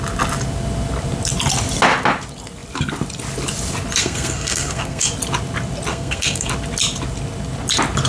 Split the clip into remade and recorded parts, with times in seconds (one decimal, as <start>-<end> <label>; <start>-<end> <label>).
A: 0.0-4.0 recorded; 4.0-5.1 remade; 5.1-5.9 recorded; 5.9-6.5 remade; 6.5-8.1 recorded